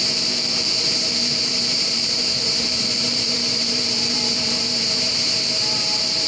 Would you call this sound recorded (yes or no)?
no